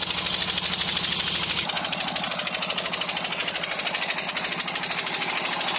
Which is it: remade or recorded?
recorded